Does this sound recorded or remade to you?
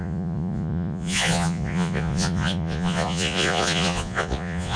remade